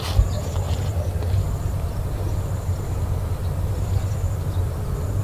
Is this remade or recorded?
recorded